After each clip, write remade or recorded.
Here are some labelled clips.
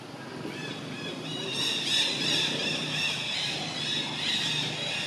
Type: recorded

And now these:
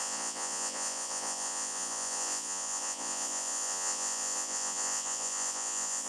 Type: remade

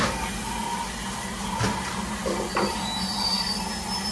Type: recorded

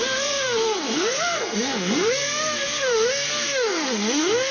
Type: remade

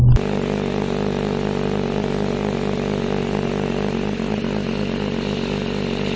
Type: recorded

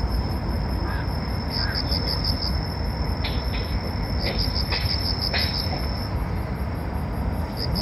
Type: recorded